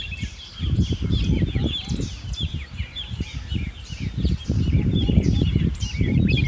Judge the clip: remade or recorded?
remade